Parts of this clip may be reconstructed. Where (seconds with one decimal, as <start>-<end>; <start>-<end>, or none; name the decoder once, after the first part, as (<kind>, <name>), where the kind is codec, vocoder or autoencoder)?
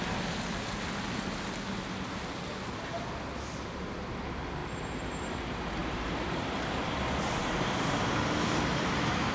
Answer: 4.6-5.3 (vocoder, BigVGAN v2); 5.8-6.8; 7.4-8.2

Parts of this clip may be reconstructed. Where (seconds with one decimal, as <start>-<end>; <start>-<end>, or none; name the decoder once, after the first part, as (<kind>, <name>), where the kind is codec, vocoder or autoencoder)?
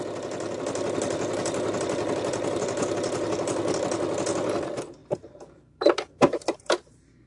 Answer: 5.0-7.3 (vocoder, BigVGAN v2)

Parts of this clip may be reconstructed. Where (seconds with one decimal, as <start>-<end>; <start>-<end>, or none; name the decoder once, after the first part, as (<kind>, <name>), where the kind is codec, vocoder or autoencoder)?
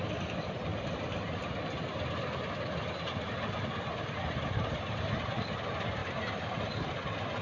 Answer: 6.0-6.9 (vocoder, BigVGAN v2)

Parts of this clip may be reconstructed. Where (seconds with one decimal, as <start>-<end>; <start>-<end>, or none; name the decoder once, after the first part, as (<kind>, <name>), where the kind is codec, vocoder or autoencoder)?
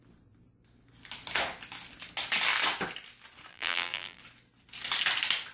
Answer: 3.5-4.2 (vocoder, BigVGAN v2)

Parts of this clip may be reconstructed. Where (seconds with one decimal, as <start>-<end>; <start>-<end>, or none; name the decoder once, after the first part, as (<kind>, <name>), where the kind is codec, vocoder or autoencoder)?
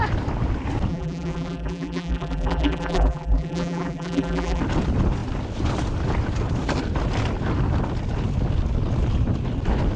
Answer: 0.9-4.6 (vocoder, BigVGAN v2)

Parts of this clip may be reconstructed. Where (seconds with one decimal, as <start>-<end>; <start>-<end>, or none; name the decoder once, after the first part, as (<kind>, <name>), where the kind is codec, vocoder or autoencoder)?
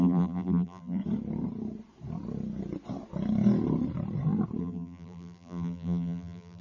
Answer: 0.0-1.0 (vocoder, BigVGAN v2); 4.6-6.6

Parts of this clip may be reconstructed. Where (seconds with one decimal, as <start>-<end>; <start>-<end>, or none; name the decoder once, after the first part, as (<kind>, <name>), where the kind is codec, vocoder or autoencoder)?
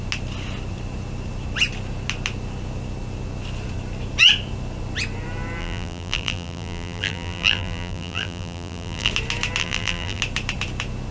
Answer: 5.6-9.1 (vocoder, BigVGAN v2); 9.6-10.2